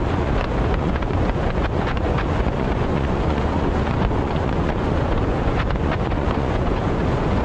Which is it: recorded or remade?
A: remade